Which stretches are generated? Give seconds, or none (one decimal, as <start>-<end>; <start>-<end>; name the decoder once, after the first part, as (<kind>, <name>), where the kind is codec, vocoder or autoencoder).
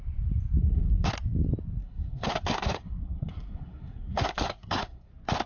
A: 0.6-1.1 (codec, SNAC); 1.8-5.1